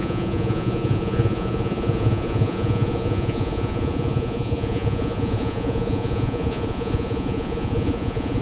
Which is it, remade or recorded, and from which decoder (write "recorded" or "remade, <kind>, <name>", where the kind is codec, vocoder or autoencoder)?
remade, vocoder, Vocos